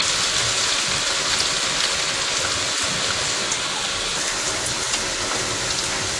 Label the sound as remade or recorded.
remade